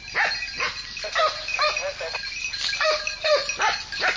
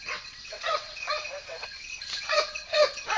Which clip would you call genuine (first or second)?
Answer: first